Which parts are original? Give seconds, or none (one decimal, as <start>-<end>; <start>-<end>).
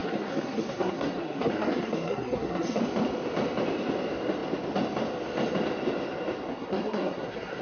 2.8-6.5